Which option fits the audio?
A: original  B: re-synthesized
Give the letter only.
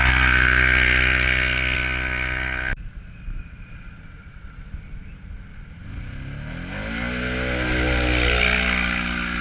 A